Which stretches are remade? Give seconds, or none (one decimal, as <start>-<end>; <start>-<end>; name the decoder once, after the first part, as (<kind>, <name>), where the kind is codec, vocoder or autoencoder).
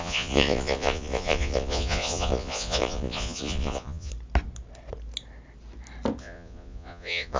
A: 0.0-4.1 (vocoder, Vocos); 6.2-7.4